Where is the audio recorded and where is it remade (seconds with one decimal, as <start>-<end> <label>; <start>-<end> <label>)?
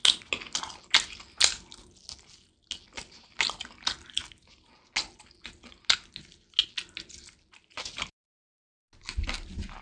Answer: 0.0-9.8 recorded